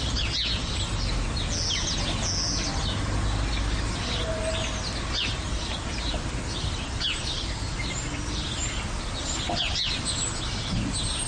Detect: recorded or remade recorded